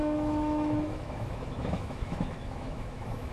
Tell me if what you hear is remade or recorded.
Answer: remade